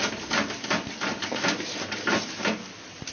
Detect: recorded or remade recorded